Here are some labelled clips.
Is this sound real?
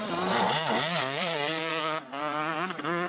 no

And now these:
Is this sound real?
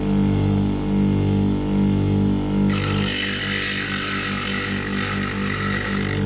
yes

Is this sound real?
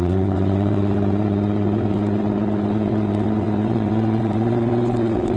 no